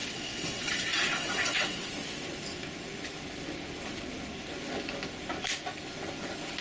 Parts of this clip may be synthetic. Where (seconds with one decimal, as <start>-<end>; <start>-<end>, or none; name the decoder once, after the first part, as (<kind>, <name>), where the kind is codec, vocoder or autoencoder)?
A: 0.0-1.9 (vocoder, WaveNeXt)

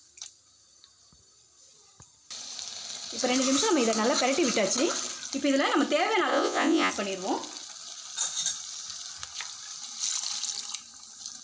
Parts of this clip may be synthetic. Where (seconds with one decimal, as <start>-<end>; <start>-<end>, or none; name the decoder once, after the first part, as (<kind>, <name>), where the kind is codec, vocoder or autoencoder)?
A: 6.3-6.9 (vocoder, Vocos)

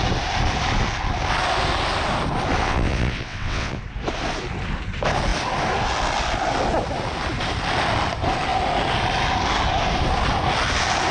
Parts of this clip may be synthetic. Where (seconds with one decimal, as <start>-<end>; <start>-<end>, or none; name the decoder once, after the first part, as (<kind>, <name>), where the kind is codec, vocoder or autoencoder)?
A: 2.6-3.8 (vocoder, WaveNeXt)

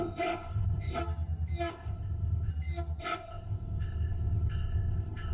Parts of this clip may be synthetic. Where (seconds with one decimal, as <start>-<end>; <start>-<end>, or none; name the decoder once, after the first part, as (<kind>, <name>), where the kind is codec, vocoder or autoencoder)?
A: 0.0-1.0 (codec, ZipCodec); 1.7-2.5; 3.0-5.3